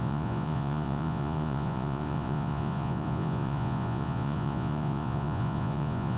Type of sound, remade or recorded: remade